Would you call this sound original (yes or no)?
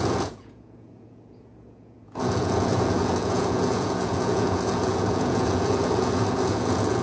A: no